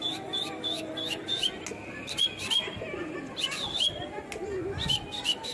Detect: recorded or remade recorded